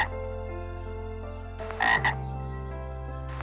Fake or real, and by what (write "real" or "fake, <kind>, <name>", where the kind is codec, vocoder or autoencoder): real